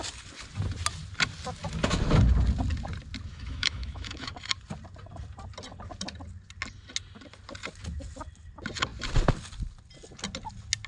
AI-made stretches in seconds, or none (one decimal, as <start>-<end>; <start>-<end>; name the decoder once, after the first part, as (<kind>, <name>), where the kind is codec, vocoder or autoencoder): 3.3-4.3 (autoencoder, DAC-VAE)